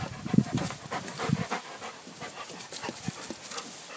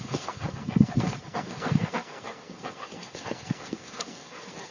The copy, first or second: second